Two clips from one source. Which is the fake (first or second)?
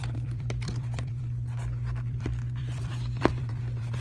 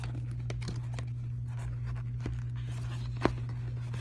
first